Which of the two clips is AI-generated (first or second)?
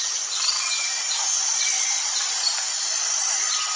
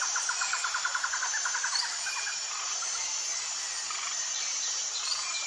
second